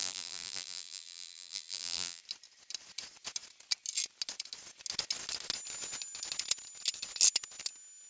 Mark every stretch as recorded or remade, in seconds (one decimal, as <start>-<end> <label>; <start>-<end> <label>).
0.0-2.2 remade; 2.2-8.1 recorded